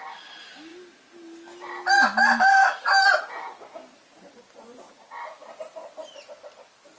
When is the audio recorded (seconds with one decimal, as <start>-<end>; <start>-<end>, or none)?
0.0-7.0